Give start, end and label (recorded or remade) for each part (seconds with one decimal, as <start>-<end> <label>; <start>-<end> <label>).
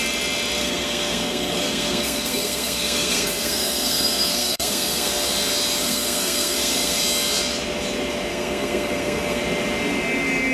0.0-0.6 recorded; 0.6-5.1 remade; 5.1-5.8 recorded; 5.8-7.0 remade; 7.0-8.3 recorded; 8.3-9.4 remade; 9.4-10.5 recorded